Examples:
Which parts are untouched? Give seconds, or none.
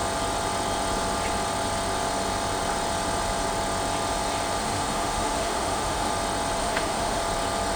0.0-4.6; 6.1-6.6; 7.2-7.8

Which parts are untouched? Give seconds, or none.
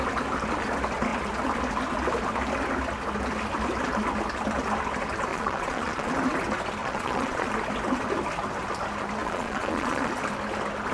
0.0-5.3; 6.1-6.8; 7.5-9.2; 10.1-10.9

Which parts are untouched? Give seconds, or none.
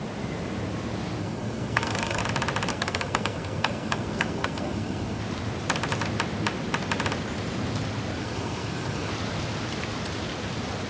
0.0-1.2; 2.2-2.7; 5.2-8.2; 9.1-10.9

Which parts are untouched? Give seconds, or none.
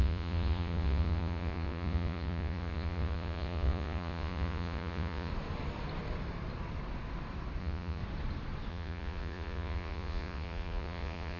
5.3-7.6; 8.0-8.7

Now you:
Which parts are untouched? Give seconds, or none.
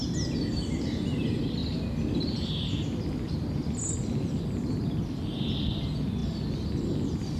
0.0-7.4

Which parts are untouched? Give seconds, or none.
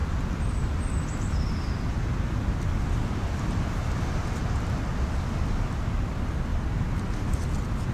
0.0-6.5; 7.4-7.9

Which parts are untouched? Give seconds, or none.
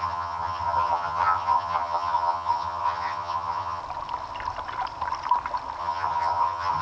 3.8-5.8